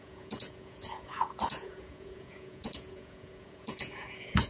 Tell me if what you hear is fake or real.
fake